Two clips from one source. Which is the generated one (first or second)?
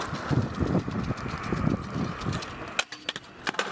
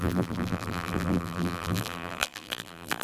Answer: second